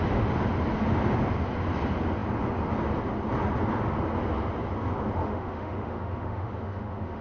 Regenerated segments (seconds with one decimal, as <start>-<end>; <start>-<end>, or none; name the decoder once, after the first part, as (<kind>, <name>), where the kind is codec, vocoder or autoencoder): 5.2-7.2 (autoencoder, DAC-VAE)